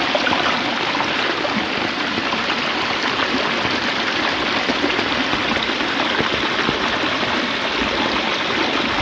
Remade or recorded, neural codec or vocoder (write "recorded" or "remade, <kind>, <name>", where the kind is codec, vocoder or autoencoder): recorded